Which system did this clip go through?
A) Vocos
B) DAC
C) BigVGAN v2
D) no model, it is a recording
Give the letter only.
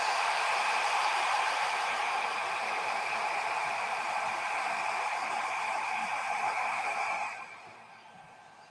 C